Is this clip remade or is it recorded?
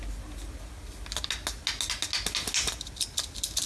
recorded